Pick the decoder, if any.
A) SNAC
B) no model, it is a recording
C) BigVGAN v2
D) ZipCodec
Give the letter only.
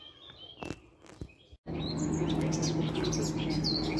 B